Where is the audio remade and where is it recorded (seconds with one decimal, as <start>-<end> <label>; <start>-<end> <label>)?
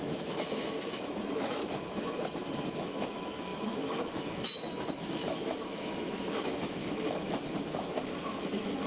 0.0-1.6 remade; 1.6-2.8 recorded; 2.8-8.9 remade